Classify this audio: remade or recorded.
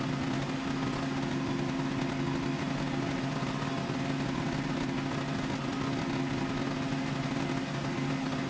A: recorded